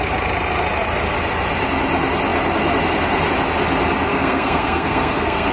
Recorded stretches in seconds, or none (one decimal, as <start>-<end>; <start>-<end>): 0.0-4.1